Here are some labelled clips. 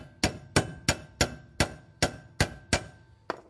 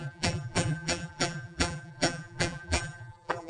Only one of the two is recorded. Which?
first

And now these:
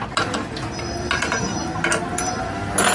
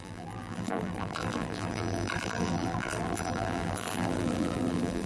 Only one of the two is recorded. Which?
first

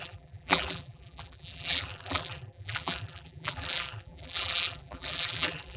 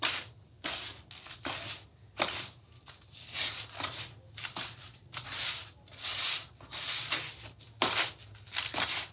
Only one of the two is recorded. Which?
second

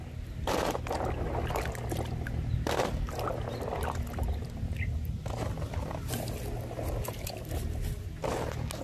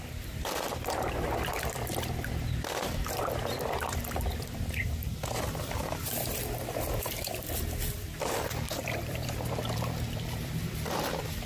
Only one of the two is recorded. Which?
first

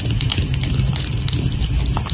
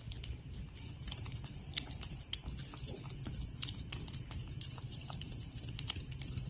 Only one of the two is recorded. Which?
first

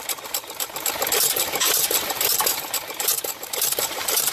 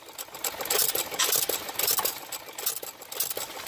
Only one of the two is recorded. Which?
second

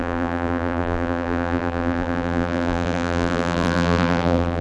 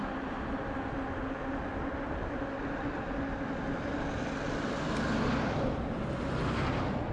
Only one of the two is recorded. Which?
second